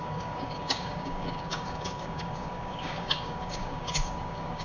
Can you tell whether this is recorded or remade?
remade